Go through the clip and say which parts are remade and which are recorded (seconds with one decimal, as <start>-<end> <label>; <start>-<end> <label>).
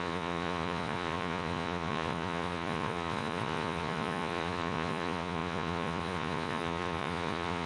0.0-7.7 remade